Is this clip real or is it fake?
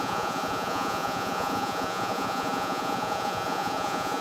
fake